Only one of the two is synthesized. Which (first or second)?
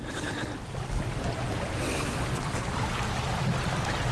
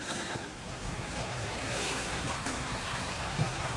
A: second